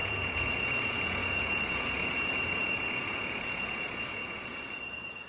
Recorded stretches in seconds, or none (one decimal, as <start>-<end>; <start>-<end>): none